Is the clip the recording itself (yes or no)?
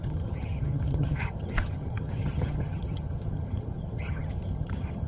no